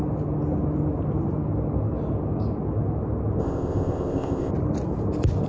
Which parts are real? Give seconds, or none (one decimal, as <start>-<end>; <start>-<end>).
0.0-3.4; 4.5-5.5

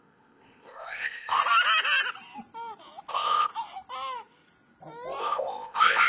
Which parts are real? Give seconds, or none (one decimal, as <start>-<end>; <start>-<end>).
1.4-3.1; 3.5-5.2